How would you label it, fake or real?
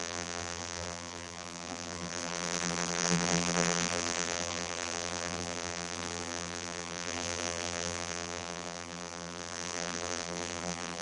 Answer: fake